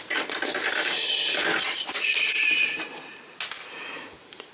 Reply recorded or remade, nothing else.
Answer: recorded